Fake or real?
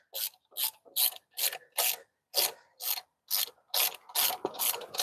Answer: real